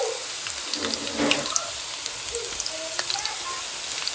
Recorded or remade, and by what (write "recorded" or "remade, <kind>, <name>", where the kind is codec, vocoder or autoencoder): recorded